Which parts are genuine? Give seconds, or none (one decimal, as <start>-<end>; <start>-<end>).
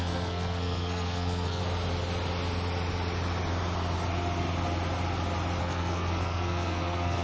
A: 1.6-5.6